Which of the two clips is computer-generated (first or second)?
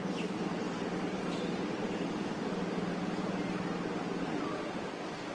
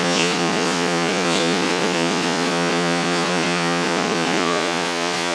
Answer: second